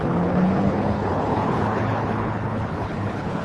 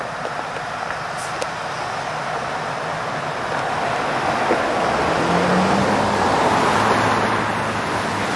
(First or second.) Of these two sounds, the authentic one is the second